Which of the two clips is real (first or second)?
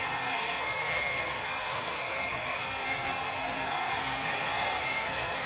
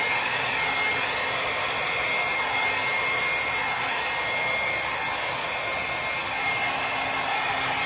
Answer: second